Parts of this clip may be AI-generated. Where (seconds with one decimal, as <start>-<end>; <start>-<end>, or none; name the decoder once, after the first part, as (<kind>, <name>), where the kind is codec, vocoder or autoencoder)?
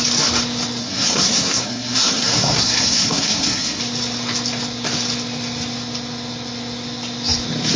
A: 0.8-3.8 (codec, SNAC)